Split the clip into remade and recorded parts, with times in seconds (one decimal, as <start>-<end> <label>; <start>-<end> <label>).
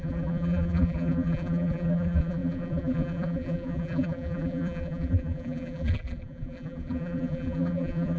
0.0-8.2 remade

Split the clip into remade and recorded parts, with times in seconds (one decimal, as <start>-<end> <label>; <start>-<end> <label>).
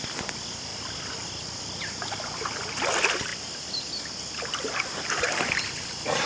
0.0-6.3 recorded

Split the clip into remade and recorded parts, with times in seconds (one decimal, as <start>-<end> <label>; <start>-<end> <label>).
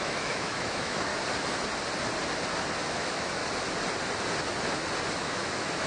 0.0-1.1 remade; 1.1-2.9 recorded; 2.9-3.4 remade; 3.4-5.1 recorded; 5.1-5.9 remade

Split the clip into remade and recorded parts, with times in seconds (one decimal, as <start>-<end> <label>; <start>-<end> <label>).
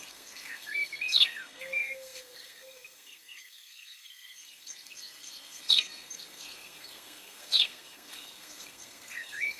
0.0-9.6 remade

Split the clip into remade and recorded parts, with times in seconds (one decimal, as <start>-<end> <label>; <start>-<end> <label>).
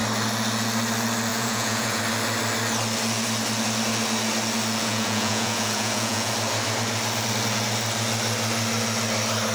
0.0-1.3 recorded; 1.3-2.0 remade; 2.0-4.8 recorded; 4.8-6.3 remade; 6.3-9.5 recorded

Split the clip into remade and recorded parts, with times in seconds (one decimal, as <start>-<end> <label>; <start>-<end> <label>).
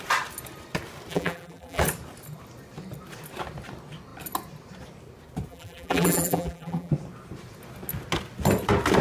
0.0-1.1 recorded; 1.1-1.8 remade; 1.8-5.5 recorded; 5.5-6.9 remade; 6.9-9.0 recorded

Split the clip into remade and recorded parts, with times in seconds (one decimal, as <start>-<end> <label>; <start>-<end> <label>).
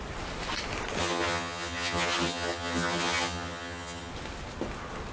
0.0-1.0 recorded; 1.0-4.1 remade; 4.1-5.1 recorded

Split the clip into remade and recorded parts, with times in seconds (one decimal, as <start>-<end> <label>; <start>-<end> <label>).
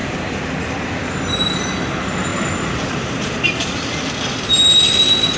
0.0-0.9 remade; 0.9-2.3 recorded; 2.3-3.7 remade; 3.7-5.4 recorded